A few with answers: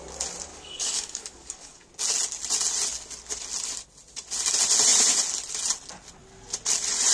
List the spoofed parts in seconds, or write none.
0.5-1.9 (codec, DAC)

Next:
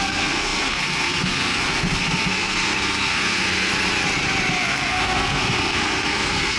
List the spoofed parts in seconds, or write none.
0.0-3.7 (codec, SNAC); 4.5-6.6

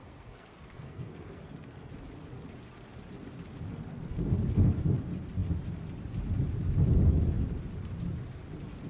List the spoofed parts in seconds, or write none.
0.0-1.9 (codec, SNAC); 3.7-4.8

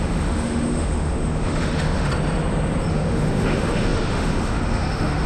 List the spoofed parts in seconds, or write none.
0.0-2.1 (autoencoder, DAC-VAE); 2.9-5.3